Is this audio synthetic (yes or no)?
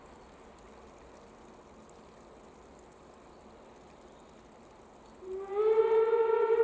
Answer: no